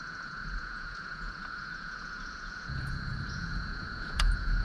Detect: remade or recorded remade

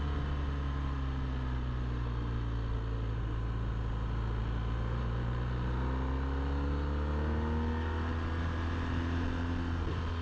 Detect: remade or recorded recorded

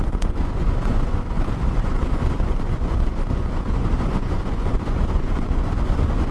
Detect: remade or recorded remade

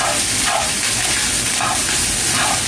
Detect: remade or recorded recorded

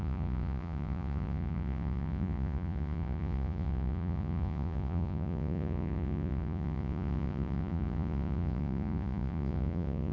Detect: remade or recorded remade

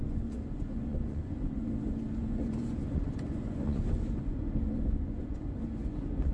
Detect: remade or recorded remade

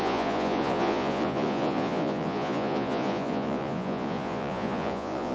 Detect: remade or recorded remade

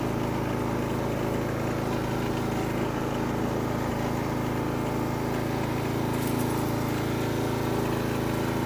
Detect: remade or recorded recorded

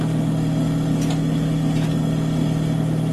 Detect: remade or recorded recorded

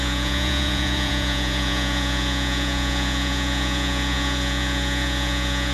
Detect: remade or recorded remade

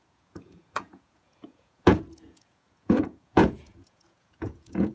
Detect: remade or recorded remade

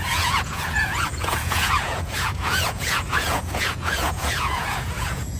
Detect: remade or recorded remade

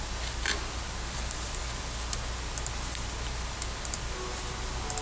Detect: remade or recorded recorded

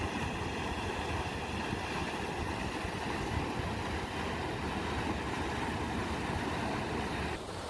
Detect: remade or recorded recorded